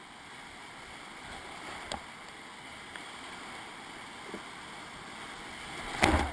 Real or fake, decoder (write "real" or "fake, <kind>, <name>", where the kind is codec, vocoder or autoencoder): real